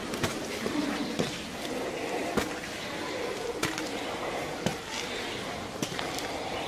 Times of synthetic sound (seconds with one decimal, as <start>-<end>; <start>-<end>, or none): none